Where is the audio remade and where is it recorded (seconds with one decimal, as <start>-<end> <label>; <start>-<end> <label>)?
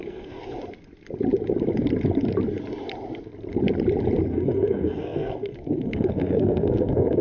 0.0-0.4 remade; 0.4-4.3 recorded; 4.3-7.2 remade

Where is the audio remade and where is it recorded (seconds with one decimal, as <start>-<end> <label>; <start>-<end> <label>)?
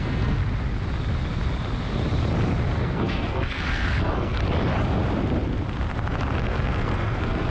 0.0-0.4 remade; 0.4-2.7 recorded; 2.7-4.4 remade; 4.4-6.4 recorded; 6.4-7.5 remade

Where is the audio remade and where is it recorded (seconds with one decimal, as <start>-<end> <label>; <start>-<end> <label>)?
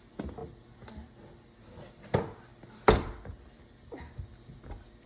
0.0-5.1 recorded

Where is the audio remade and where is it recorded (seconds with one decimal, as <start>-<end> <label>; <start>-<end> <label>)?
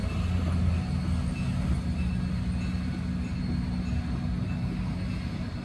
0.0-5.6 recorded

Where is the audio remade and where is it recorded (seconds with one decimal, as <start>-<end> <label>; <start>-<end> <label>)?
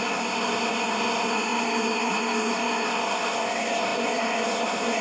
0.0-5.0 remade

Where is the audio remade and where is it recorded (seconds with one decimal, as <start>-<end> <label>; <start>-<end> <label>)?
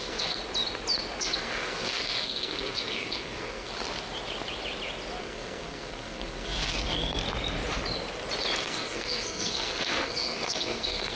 0.0-0.4 remade; 0.4-1.2 recorded; 1.2-3.7 remade; 3.7-5.2 recorded; 5.2-7.2 remade; 7.2-8.6 recorded; 8.6-11.2 remade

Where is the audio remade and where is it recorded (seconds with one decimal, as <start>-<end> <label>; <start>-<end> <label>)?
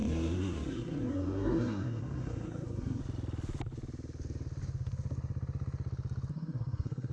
0.0-3.0 remade; 3.0-6.3 recorded; 6.3-7.1 remade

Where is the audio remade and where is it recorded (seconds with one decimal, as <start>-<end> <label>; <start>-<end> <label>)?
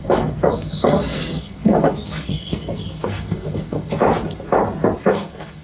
0.0-4.0 remade; 4.0-5.1 recorded; 5.1-5.6 remade